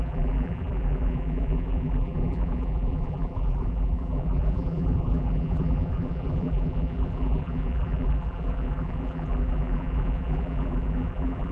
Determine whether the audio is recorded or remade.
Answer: remade